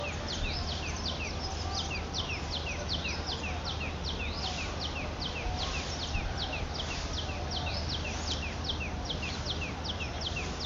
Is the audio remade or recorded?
recorded